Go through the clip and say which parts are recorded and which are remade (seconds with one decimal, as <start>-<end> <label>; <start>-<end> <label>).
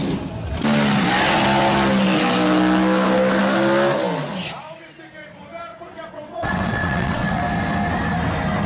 0.0-5.7 recorded; 5.7-7.4 remade; 7.4-8.7 recorded